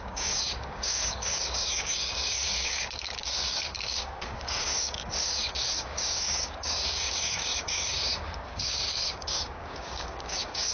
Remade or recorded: remade